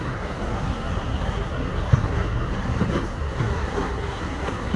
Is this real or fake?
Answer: fake